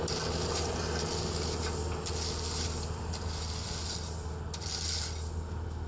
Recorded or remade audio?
recorded